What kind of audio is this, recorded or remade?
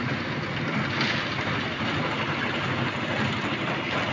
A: recorded